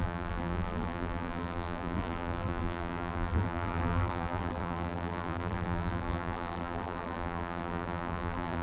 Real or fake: fake